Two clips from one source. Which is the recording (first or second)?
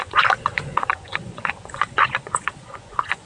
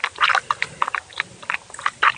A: second